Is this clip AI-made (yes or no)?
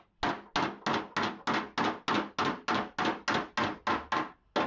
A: no